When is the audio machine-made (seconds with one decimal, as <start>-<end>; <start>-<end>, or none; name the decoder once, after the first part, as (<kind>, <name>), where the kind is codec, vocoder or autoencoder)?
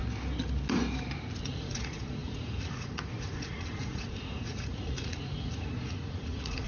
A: 1.4-6.7 (vocoder, Vocos)